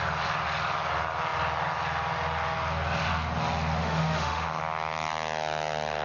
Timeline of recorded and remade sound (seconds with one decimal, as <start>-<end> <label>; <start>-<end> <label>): 0.0-3.8 recorded; 3.8-4.6 remade; 4.6-6.0 recorded